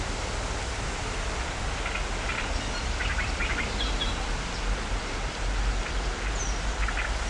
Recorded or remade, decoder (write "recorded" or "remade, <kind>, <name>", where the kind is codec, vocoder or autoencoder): recorded